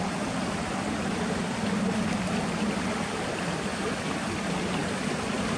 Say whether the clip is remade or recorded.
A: recorded